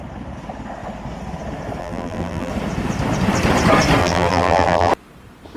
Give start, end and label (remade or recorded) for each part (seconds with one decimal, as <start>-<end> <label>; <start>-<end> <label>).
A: 0.0-1.8 recorded; 1.8-2.5 remade; 2.5-4.0 recorded; 4.0-4.9 remade; 4.9-5.6 recorded